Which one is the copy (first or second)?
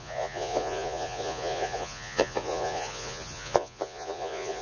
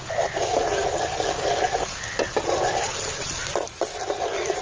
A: first